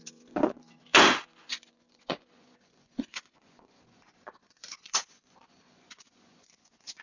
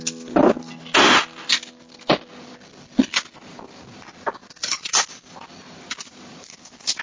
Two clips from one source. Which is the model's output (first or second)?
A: first